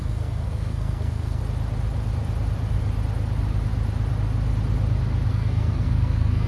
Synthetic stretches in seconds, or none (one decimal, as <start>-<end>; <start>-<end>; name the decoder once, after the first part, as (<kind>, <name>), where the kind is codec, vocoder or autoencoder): 0.0-1.4 (codec, SNAC); 5.3-6.5